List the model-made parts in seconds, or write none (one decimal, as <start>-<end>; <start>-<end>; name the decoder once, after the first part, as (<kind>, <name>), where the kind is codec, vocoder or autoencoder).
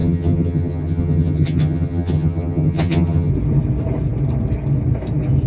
0.0-3.3 (vocoder, HiFi-GAN)